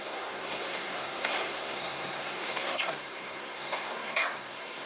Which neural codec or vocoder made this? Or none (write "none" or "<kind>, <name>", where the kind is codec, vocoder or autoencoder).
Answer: codec, SNAC